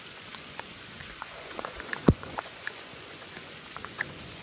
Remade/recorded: remade